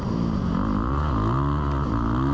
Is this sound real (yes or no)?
yes